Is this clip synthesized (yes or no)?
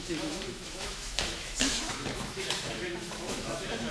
yes